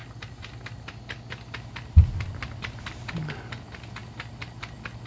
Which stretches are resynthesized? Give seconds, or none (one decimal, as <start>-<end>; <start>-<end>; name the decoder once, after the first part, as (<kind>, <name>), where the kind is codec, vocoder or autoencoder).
none